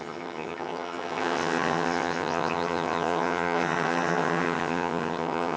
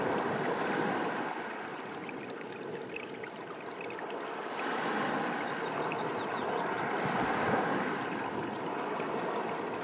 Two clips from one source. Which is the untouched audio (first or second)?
second